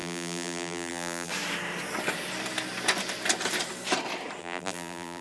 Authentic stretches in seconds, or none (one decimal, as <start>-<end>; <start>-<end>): 1.3-4.4